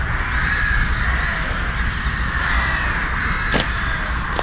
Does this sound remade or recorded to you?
recorded